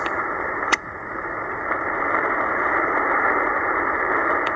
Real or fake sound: fake